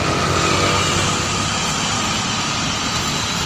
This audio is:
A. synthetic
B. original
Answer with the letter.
B